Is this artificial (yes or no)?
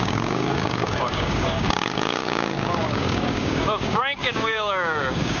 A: yes